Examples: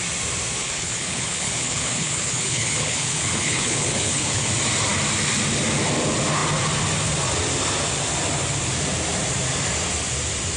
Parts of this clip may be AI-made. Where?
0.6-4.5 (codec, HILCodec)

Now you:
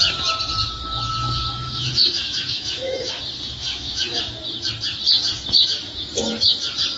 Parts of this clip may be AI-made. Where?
1.5-3.2 (autoencoder, DAC-VAE); 3.6-4.2

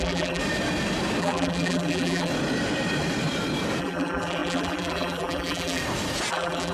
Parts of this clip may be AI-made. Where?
0.0-0.4 (vocoder, BigVGAN v2); 1.2-2.3; 3.8-5.8; 6.3-6.7

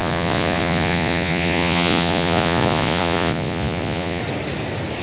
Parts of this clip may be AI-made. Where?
0.0-4.2 (vocoder, Vocos)

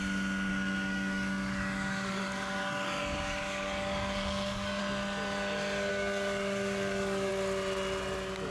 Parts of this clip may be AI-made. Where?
0.5-4.8 (codec, DAC); 5.9-7.3

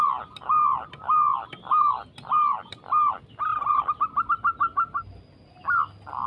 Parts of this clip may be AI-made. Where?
none

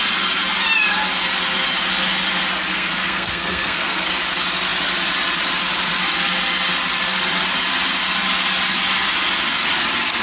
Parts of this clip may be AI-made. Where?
2.7-4.1 (codec, SNAC)

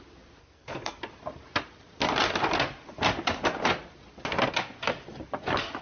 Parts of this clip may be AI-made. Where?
0.4-1.0 (codec, SNAC)